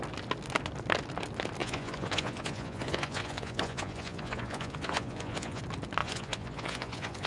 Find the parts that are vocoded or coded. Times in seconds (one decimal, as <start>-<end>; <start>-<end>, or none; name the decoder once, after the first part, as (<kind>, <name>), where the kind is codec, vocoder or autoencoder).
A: 1.6-5.6 (vocoder, Vocos); 6.0-7.3